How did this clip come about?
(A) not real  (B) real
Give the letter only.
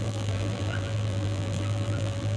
A